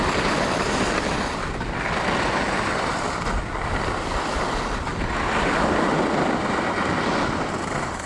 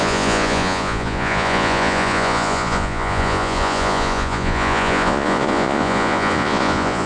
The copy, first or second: second